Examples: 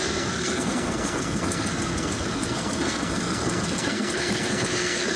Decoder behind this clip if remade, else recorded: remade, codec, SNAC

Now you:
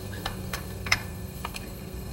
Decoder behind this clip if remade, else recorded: remade, codec, SNAC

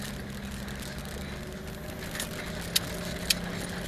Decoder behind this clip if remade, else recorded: recorded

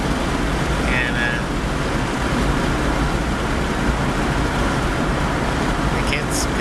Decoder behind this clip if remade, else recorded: recorded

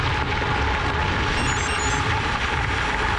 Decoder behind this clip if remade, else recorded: recorded